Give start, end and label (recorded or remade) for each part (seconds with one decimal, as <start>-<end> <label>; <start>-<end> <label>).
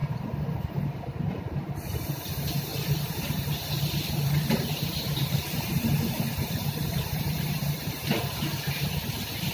0.0-0.8 remade; 0.8-2.7 recorded; 2.7-7.9 remade; 7.9-9.5 recorded